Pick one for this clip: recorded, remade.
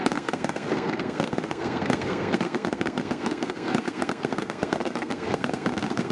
remade